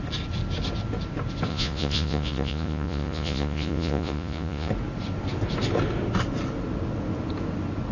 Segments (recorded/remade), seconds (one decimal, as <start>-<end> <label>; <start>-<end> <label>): 0.0-1.5 recorded; 1.5-4.7 remade; 4.7-7.9 recorded